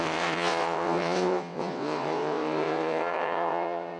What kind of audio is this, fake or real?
fake